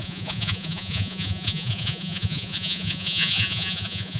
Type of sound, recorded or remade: remade